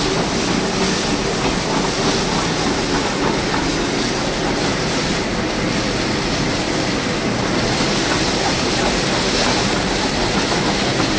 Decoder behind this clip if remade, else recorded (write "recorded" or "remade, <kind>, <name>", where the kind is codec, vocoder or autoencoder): recorded